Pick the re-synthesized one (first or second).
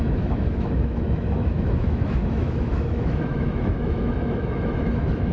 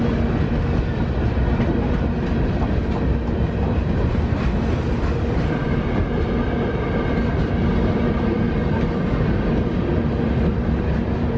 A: first